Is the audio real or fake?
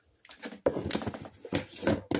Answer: real